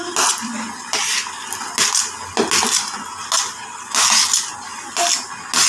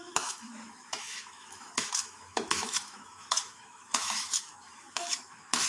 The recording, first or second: first